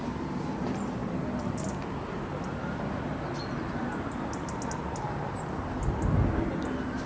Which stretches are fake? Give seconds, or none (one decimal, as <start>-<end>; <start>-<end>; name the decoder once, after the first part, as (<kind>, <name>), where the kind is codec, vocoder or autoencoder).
none